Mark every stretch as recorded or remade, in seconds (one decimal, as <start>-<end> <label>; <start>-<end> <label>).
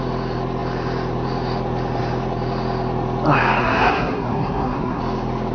0.0-3.6 recorded; 3.6-5.0 remade; 5.0-5.5 recorded